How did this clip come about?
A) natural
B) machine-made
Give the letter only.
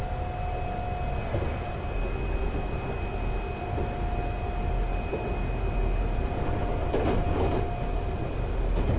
A